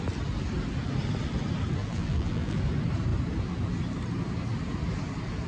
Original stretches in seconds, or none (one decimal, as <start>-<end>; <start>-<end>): 0.0-1.8; 2.6-5.5